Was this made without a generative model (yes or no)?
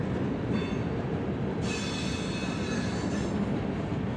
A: yes